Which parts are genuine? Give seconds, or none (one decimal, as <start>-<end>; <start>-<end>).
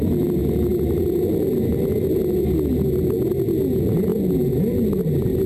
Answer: 0.0-5.5